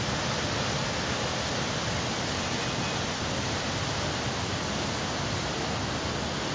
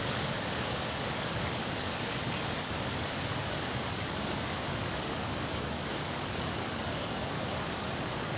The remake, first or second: second